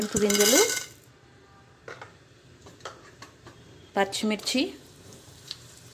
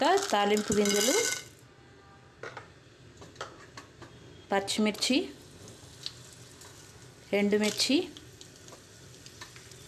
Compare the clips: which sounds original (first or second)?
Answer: second